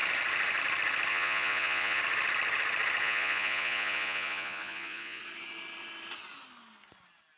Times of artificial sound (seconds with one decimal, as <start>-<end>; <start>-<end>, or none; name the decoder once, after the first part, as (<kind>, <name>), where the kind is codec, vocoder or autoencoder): 1.1-2.0 (vocoder, Vocos); 3.0-5.2